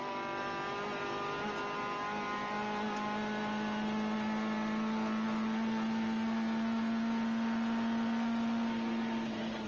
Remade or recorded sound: recorded